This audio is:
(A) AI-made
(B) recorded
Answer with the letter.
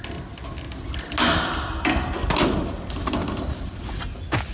B